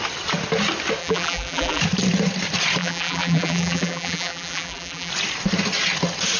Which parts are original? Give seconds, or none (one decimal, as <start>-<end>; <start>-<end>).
0.0-1.0; 1.8-2.8; 5.1-6.4